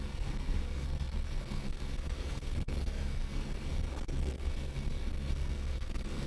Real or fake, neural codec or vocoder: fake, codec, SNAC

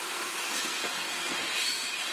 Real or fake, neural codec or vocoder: fake, codec, SNAC